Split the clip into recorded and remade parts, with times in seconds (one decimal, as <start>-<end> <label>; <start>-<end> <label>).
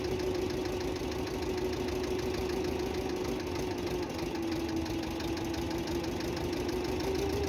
0.0-7.5 recorded